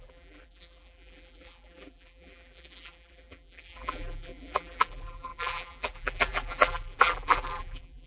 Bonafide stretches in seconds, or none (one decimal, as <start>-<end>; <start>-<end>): none